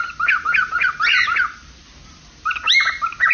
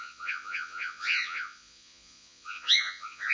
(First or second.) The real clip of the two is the first